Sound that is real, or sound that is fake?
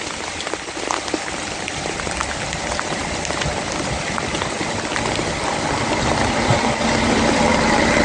real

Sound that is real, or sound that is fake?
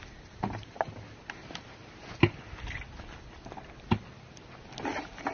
real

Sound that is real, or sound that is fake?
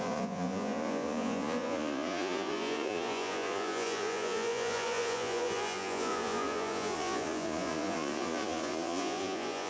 fake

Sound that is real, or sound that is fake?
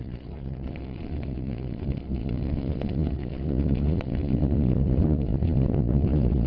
fake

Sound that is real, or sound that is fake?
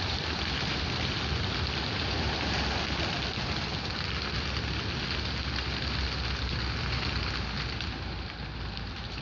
real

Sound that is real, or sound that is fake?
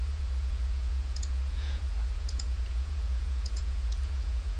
fake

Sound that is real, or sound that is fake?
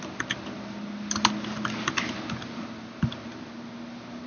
real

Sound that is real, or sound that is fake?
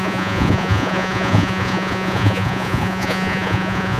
fake